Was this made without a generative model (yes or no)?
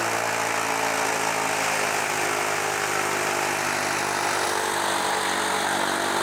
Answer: yes